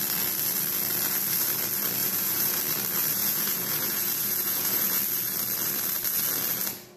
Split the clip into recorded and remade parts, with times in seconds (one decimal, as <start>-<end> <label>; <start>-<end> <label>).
0.0-2.0 recorded; 2.0-2.6 remade; 2.6-3.2 recorded; 3.2-5.0 remade; 5.0-7.0 recorded